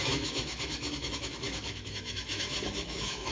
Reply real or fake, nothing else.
fake